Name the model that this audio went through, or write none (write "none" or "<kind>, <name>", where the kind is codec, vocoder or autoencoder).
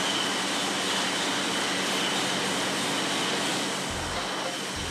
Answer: none